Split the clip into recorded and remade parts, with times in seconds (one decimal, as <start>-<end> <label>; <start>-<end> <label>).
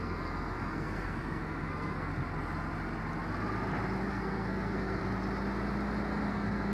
0.0-2.1 remade; 2.1-4.1 recorded; 4.1-5.0 remade; 5.0-6.3 recorded; 6.3-6.7 remade